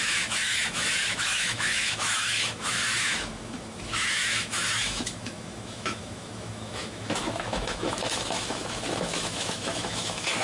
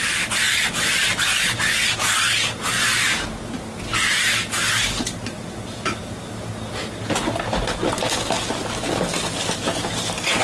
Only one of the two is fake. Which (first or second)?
first